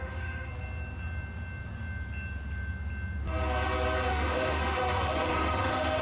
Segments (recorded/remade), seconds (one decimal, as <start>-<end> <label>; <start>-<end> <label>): 0.0-0.5 remade; 0.5-4.1 recorded; 4.1-6.0 remade